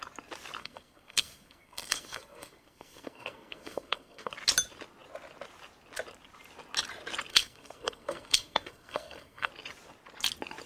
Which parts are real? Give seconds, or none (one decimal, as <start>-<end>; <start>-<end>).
0.0-0.6; 4.3-7.3; 9.5-10.7